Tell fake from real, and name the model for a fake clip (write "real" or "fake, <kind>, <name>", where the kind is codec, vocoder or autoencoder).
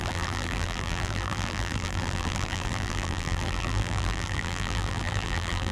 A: fake, vocoder, BigVGAN v2